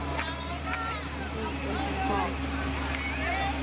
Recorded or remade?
recorded